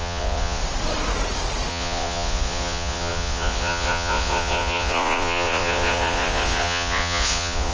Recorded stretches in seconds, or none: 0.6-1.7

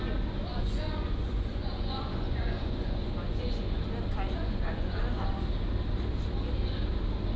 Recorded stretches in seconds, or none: 0.0-0.5; 3.8-4.4; 5.0-7.4

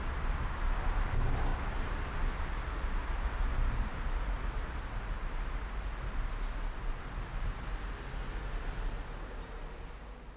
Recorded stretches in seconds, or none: 0.0-10.4

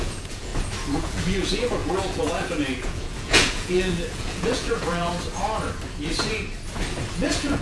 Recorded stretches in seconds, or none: 0.5-1.0; 5.1-7.1

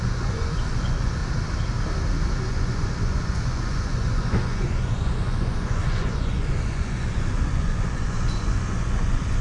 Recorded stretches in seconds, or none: 1.2-2.4